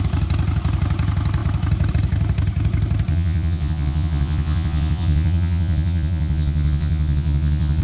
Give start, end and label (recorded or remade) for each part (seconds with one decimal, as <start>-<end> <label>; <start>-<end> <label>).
0.0-3.1 recorded; 3.1-7.8 remade